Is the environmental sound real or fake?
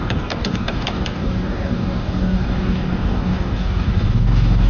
fake